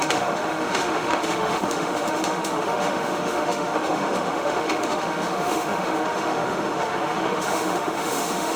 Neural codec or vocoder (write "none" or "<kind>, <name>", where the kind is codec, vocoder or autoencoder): autoencoder, DAC-VAE